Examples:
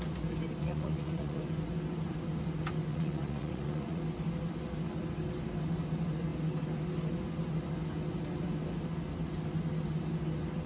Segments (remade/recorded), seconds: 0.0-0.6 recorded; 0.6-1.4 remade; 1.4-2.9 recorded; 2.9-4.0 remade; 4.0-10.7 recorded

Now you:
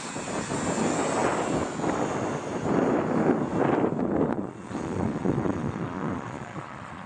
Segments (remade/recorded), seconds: 0.0-4.3 recorded; 4.3-7.1 remade

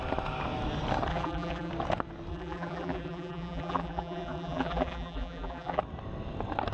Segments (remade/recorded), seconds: 0.0-1.1 recorded; 1.1-1.7 remade; 1.7-2.3 recorded; 2.3-5.8 remade; 5.8-6.7 recorded